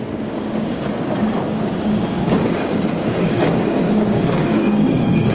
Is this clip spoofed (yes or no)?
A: yes